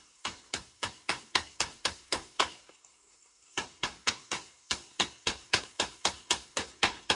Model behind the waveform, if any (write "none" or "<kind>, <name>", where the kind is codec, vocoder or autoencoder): codec, SNAC